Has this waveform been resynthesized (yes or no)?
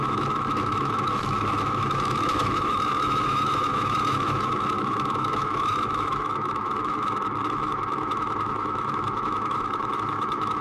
yes